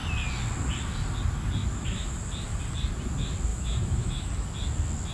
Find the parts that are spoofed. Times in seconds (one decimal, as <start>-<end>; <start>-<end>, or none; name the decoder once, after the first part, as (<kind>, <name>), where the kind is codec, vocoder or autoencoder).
1.6-2.2 (autoencoder, DAC-VAE); 3.5-4.3

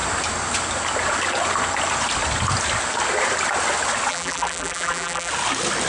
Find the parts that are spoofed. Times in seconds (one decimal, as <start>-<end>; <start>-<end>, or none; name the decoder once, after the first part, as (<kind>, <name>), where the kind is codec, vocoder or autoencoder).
4.1-5.3 (vocoder, BigVGAN v2)

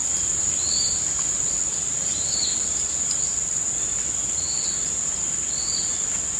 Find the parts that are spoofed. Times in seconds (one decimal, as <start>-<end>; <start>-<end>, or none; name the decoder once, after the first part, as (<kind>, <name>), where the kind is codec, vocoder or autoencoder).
none

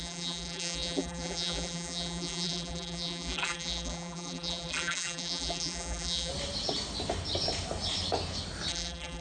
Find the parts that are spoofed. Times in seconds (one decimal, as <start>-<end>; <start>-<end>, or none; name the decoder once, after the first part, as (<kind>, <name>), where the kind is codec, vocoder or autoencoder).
0.0-6.3 (vocoder, BigVGAN v2); 8.7-9.2

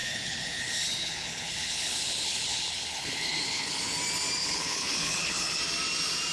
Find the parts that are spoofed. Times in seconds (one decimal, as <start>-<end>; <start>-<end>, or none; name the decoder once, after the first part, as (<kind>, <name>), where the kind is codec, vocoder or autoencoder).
0.0-3.8 (codec, HILCodec); 4.4-5.6